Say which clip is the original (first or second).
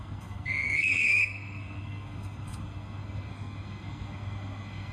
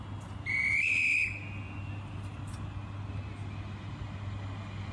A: second